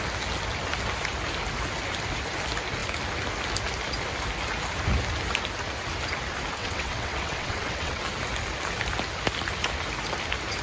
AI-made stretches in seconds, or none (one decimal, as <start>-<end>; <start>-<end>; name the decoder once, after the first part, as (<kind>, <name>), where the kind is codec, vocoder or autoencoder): 6.6-8.0 (vocoder, WaveNeXt)